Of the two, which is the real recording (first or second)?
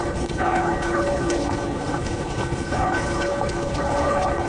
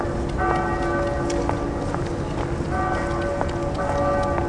second